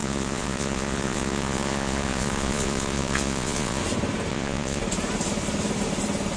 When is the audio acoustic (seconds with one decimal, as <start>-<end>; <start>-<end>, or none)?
3.8-4.3; 4.8-6.4